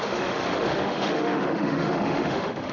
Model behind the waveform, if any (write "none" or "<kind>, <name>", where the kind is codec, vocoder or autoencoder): autoencoder, DAC-VAE